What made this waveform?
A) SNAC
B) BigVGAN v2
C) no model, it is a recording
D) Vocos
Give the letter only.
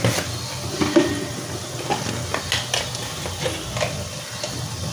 C